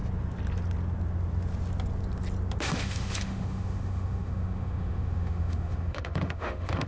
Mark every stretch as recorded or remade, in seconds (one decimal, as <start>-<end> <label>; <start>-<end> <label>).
0.0-2.6 recorded; 2.6-6.9 remade